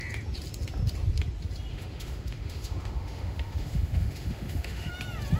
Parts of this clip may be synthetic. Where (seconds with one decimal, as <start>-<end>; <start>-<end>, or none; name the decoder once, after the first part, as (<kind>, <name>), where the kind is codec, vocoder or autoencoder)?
1.7-4.9 (autoencoder, DAC-VAE)